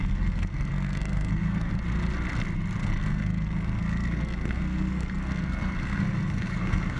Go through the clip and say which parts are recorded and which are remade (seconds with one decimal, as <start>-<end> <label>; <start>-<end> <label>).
0.0-1.7 remade; 1.7-2.8 recorded; 2.8-7.0 remade